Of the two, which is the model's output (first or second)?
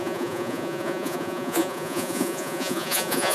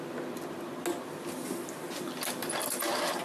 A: first